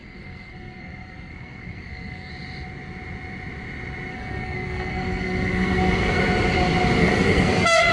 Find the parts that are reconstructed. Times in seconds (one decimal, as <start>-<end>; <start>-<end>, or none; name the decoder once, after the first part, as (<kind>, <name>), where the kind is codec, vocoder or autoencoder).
0.0-2.3 (codec, SNAC); 4.1-6.2; 7.0-7.9